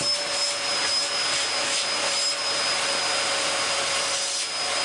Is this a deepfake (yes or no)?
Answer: no